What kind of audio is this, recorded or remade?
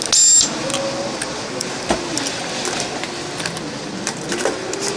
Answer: recorded